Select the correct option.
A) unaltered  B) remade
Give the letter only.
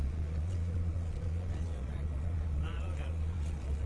B